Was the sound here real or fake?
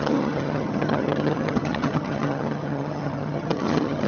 fake